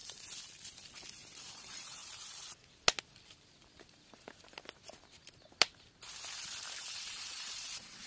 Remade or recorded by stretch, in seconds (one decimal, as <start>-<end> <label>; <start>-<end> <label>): 0.0-1.5 recorded; 1.5-2.0 remade; 2.0-6.9 recorded; 6.9-8.1 remade